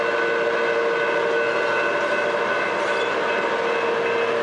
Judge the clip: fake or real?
real